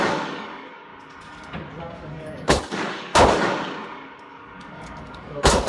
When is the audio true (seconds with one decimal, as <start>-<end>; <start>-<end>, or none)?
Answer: 0.9-1.8; 3.1-4.2